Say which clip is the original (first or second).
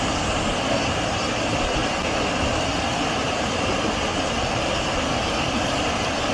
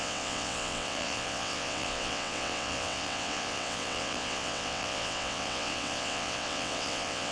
first